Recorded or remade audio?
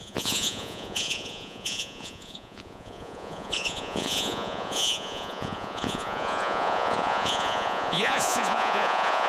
remade